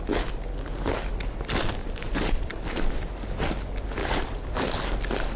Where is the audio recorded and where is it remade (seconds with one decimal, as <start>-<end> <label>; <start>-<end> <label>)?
0.0-1.8 recorded; 1.8-3.1 remade; 3.1-4.0 recorded; 4.0-4.7 remade; 4.7-5.4 recorded